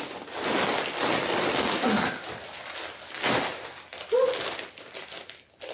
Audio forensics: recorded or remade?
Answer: recorded